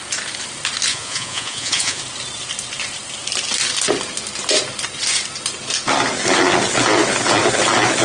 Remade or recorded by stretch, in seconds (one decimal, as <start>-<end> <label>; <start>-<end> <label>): 0.0-0.9 recorded; 0.9-2.0 remade; 2.0-8.0 recorded